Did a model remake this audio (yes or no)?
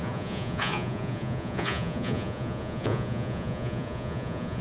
yes